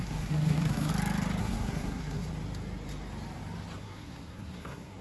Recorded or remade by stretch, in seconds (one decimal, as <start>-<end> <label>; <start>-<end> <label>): 0.0-0.9 remade; 0.9-1.4 recorded; 1.4-2.3 remade; 2.3-3.8 recorded; 3.8-5.0 remade